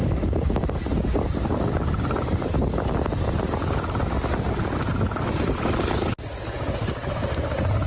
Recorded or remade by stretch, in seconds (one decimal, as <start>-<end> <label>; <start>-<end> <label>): 0.0-7.9 recorded